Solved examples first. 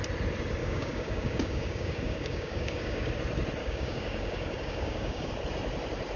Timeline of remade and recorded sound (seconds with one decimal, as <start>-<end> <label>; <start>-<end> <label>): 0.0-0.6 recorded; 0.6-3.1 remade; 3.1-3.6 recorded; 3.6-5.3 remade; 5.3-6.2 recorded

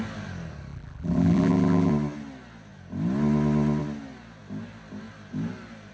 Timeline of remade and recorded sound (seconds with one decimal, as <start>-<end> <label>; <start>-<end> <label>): 0.0-0.7 recorded; 0.7-1.9 remade; 1.9-5.9 recorded

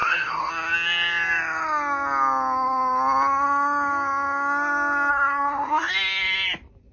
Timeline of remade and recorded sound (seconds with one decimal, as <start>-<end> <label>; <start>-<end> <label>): 0.0-0.5 remade; 0.5-5.1 recorded; 5.1-5.9 remade; 5.9-6.9 recorded

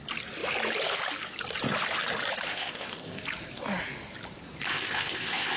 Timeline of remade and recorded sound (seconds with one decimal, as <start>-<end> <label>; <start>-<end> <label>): 0.0-2.5 recorded; 2.5-3.2 remade; 3.2-4.7 recorded; 4.7-5.6 remade

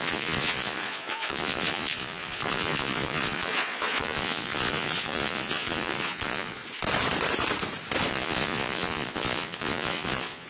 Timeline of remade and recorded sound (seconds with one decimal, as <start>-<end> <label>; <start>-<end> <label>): 0.0-6.6 remade; 6.6-8.1 recorded; 8.1-10.5 remade